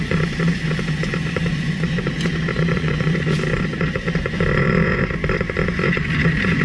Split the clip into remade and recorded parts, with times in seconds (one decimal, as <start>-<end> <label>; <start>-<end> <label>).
0.0-6.6 remade